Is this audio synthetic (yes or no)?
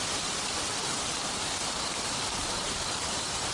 no